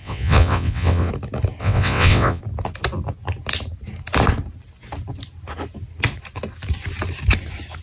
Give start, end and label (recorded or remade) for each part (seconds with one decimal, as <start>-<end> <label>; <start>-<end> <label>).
0.0-1.1 remade; 1.1-1.6 recorded; 1.6-2.4 remade; 2.4-7.8 recorded